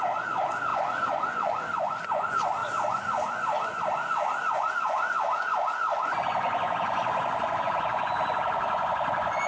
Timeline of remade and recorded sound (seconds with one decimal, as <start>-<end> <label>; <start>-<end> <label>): 0.0-9.5 remade

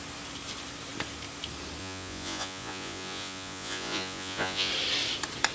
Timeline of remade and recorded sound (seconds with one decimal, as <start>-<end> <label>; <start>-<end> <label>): 0.0-1.8 recorded; 1.8-4.7 remade; 4.7-5.5 recorded

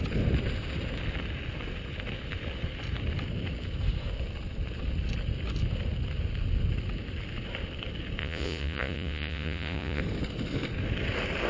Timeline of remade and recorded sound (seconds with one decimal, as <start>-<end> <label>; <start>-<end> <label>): 0.0-8.2 recorded; 8.2-10.0 remade; 10.0-11.5 recorded

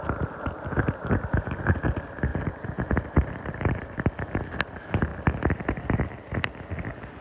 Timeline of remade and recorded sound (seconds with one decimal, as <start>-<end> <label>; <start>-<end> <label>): 0.0-2.3 recorded; 2.3-4.0 remade; 4.0-5.1 recorded; 5.1-6.0 remade; 6.0-7.2 recorded

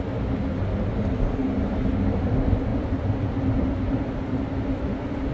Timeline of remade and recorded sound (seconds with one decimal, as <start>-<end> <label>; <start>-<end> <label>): 0.0-1.4 recorded; 1.4-2.3 remade; 2.3-2.7 recorded; 2.7-3.7 remade; 3.7-5.3 recorded